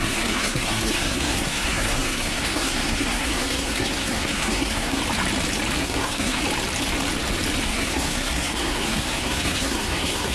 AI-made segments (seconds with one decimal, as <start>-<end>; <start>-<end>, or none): 0.0-5.0; 5.8-6.4; 7.6-10.3